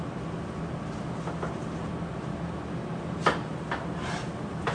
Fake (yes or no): no